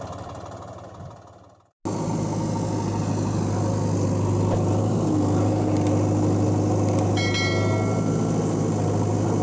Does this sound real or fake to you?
real